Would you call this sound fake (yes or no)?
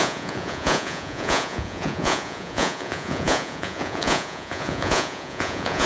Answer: yes